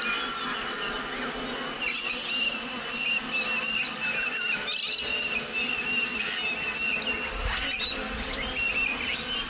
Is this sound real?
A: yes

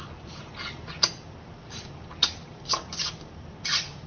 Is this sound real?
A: yes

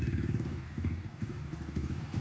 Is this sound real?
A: no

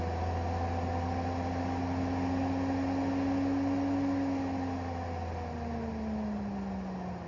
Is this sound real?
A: yes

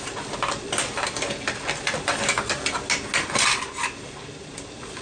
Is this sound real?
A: yes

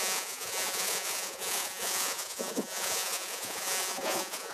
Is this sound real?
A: no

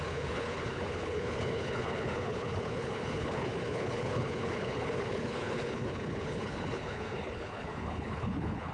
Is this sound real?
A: no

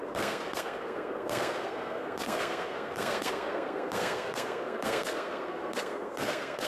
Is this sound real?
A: no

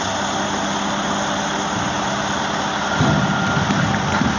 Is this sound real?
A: yes